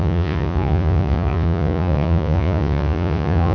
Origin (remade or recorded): remade